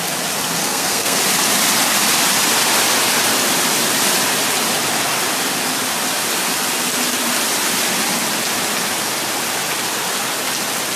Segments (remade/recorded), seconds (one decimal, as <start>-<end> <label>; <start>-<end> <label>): 0.0-0.6 recorded; 0.6-1.2 remade; 1.2-11.0 recorded